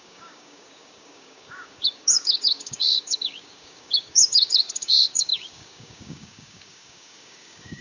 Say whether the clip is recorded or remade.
remade